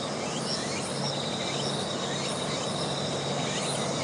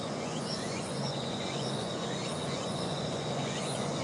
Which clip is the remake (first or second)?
second